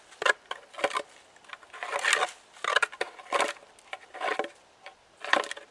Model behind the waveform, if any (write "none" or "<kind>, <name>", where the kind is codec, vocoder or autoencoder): none